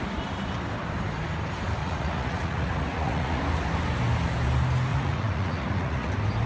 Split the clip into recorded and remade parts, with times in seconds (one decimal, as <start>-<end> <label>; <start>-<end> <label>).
0.0-1.8 recorded; 1.8-3.4 remade; 3.4-4.9 recorded; 4.9-6.1 remade; 6.1-6.5 recorded